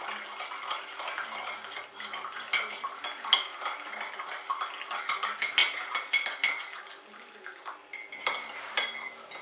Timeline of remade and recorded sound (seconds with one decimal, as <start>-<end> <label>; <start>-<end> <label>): 0.0-9.4 recorded